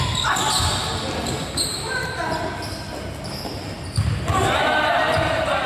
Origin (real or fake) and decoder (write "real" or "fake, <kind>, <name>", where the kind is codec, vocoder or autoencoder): real